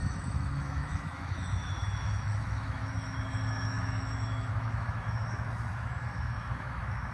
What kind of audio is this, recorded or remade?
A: remade